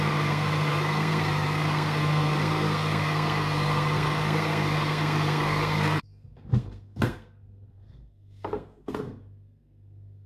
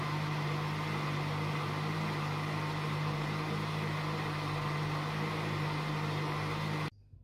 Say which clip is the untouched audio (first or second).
second